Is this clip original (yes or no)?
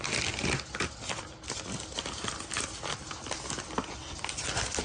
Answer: yes